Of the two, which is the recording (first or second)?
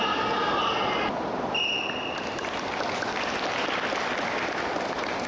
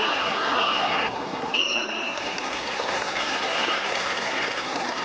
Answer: first